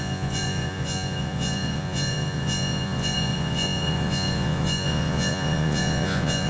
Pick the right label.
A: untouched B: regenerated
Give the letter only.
B